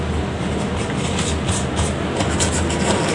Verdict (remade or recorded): recorded